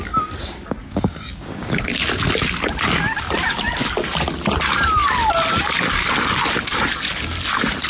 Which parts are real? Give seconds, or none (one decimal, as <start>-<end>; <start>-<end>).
0.0-0.8; 1.9-7.9